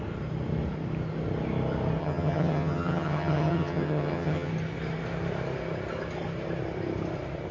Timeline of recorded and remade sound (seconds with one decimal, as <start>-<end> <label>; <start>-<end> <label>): 0.0-2.0 recorded; 2.0-4.5 remade; 4.5-7.5 recorded